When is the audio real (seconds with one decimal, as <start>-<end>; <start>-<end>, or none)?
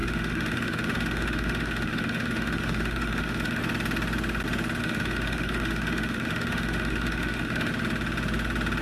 3.6-4.8; 7.7-8.8